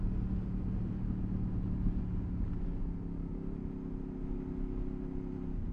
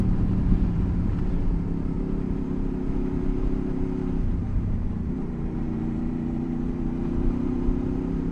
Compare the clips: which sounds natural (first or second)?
first